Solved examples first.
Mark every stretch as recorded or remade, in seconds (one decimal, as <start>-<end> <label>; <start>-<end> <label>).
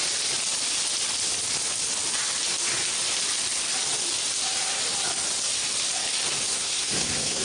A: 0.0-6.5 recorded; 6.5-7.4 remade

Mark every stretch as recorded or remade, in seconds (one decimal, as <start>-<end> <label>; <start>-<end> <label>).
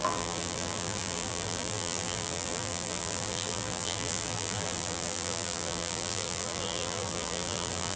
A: 0.0-8.0 remade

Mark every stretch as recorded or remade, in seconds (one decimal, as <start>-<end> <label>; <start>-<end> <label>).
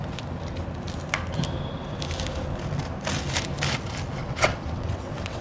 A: 0.0-4.2 recorded; 4.2-5.4 remade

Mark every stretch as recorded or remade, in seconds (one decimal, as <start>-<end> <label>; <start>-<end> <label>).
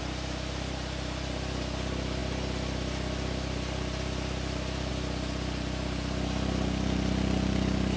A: 0.0-8.0 recorded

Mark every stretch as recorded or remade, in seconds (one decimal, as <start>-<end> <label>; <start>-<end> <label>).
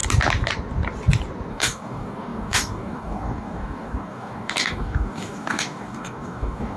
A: 0.0-1.5 recorded; 1.5-6.8 remade